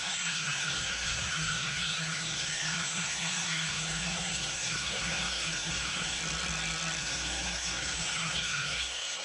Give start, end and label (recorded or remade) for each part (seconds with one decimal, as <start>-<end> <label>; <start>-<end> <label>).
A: 0.0-6.2 remade; 6.2-7.0 recorded; 7.0-9.2 remade